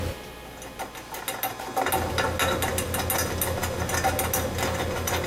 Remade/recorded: recorded